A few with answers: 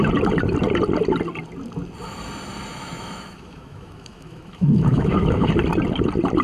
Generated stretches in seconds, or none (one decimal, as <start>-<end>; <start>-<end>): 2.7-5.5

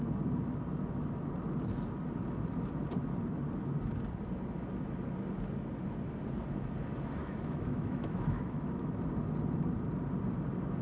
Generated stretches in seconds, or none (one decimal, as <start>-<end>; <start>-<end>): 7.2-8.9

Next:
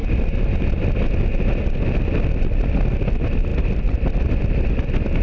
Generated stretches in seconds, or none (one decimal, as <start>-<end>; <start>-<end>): none

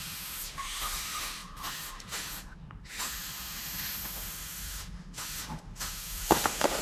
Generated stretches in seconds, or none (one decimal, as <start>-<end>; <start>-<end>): 0.0-6.8